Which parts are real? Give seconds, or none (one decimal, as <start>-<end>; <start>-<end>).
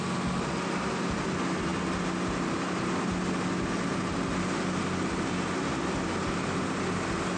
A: 0.0-7.4